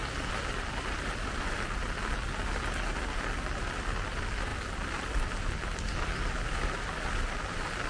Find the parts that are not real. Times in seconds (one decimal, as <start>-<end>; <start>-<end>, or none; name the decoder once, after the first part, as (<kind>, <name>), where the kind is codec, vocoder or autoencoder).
none